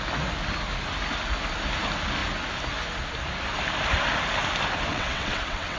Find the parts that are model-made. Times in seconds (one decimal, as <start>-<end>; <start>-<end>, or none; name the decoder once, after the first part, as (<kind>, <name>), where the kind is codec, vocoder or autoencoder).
4.9-5.8 (vocoder, WaveNeXt)